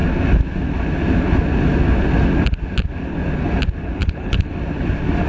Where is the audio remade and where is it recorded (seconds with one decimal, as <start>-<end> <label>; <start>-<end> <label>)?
0.0-4.0 recorded; 4.0-4.5 remade; 4.5-5.3 recorded